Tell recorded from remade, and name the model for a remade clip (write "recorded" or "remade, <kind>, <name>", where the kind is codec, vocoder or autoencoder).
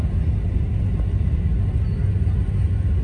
recorded